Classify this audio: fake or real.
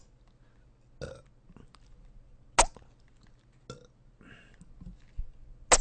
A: real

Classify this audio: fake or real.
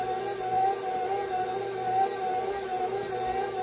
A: real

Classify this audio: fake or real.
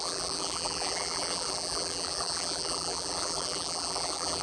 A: fake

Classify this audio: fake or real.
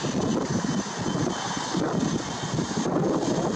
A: real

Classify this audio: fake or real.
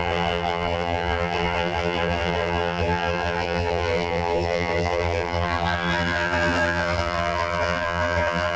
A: fake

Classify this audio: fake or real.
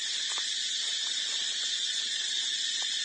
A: real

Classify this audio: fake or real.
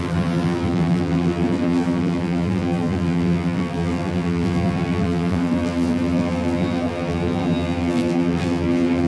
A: fake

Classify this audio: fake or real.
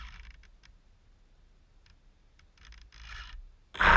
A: real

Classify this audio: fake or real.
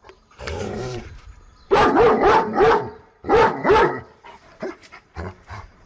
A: fake